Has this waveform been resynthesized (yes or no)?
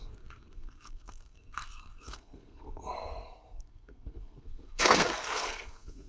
yes